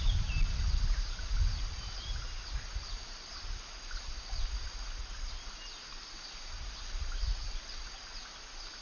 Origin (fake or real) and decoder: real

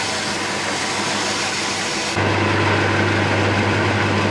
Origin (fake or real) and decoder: real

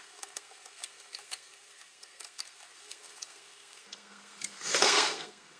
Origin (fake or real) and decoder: fake, codec, SNAC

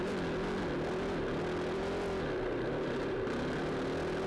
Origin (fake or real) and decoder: real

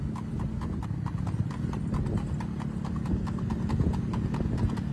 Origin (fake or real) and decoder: real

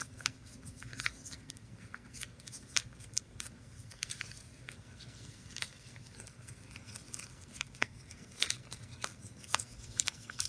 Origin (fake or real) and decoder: fake, codec, SNAC